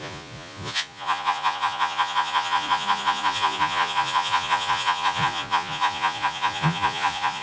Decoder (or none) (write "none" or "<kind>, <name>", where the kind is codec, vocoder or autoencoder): vocoder, Vocos